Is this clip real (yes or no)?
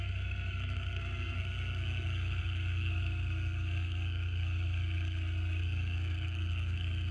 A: no